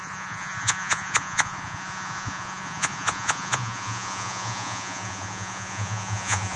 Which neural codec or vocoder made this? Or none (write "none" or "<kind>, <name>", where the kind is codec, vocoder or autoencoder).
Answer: vocoder, Vocos